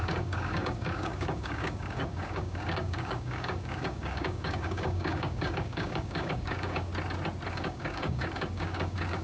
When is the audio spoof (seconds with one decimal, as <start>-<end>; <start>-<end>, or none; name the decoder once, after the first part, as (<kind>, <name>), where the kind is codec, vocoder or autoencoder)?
0.0-6.9 (codec, DAC); 7.5-9.2